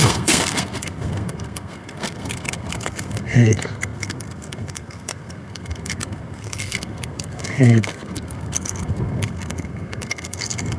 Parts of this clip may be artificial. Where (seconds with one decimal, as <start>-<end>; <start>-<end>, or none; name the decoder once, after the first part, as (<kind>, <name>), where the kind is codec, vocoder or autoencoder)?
0.0-10.8 (codec, SNAC)